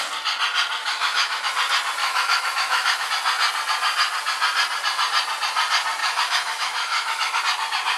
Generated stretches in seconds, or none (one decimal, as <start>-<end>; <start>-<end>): 0.8-1.5; 2.0-3.1; 6.0-7.4